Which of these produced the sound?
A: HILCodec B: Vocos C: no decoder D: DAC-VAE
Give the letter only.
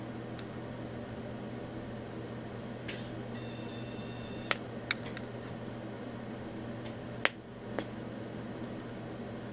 C